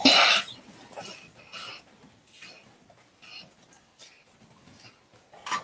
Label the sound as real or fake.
real